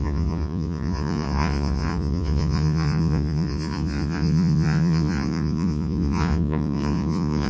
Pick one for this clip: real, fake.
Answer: fake